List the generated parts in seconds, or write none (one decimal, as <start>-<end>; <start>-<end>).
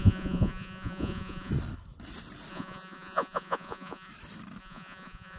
0.0-1.5; 2.5-4.1; 4.6-5.4